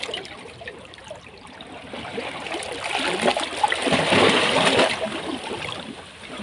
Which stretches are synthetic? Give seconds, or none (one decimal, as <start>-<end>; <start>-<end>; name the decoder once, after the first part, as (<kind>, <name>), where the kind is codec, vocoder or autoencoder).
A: 0.0-2.1 (vocoder, BigVGAN v2); 2.7-6.4

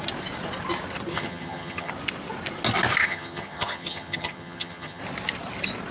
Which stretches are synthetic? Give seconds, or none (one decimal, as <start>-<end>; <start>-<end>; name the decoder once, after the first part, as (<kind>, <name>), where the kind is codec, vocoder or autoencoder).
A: 1.1-1.9 (vocoder, HiFi-GAN); 3.0-5.0

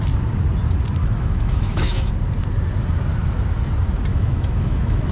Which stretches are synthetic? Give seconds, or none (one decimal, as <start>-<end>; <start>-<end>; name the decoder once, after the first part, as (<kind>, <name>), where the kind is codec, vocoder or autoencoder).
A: 1.0-2.1 (autoencoder, DAC-VAE); 4.1-5.1

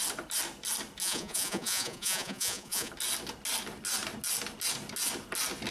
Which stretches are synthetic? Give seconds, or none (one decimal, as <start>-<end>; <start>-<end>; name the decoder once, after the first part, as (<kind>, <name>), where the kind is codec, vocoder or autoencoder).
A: 1.0-2.9 (vocoder, Vocos)

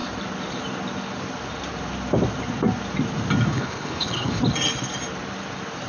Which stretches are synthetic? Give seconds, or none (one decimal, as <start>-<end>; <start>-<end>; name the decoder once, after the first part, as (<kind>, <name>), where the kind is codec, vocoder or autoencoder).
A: 3.5-4.4 (codec, HILCodec)